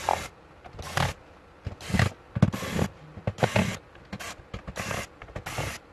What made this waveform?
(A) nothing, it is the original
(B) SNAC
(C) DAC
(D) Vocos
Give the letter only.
A